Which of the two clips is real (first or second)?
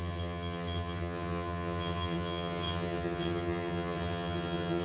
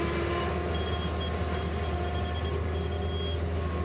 second